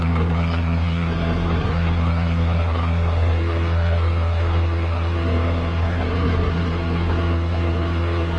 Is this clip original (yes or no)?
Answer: no